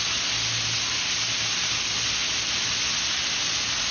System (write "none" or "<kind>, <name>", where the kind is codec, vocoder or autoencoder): none